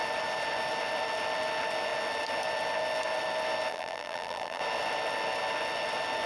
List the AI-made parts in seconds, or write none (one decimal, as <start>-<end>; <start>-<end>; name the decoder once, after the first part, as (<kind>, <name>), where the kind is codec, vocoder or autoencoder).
3.7-4.6 (vocoder, BigVGAN v2)